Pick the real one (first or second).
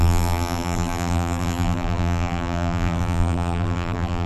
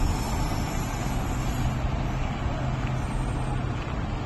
second